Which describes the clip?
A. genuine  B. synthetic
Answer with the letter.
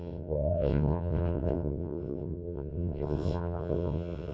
B